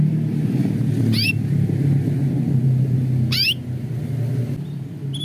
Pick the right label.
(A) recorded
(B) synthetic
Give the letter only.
A